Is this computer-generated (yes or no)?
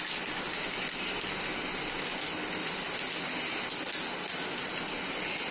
no